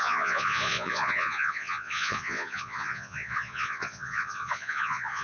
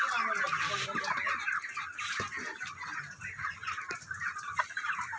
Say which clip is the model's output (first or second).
first